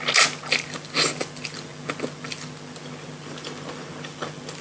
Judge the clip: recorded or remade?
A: recorded